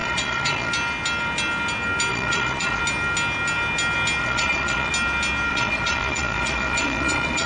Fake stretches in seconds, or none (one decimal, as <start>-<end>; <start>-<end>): 0.0-0.7; 2.1-2.8; 4.2-4.9; 5.5-7.5